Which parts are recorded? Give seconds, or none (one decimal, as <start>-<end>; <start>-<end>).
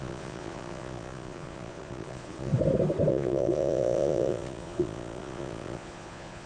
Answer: 2.5-3.1